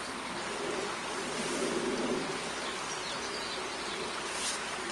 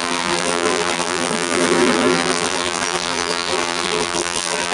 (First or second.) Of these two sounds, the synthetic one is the second